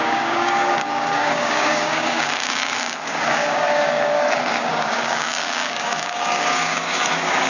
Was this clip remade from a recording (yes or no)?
yes